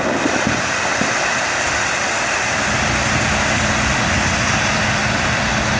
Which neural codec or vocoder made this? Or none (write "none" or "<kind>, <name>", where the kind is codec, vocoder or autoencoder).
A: none